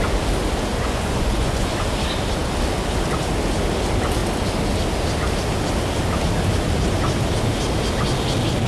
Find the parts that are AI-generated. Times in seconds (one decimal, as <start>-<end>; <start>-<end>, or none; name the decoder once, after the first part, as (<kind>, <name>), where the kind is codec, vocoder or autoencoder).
0.7-1.7 (vocoder, Vocos)